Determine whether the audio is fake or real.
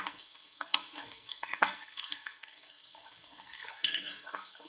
fake